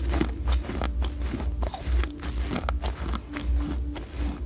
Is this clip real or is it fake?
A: real